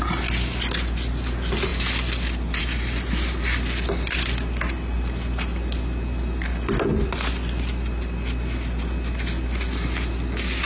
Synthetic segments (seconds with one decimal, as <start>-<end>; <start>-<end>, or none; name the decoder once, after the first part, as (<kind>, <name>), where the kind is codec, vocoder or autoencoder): none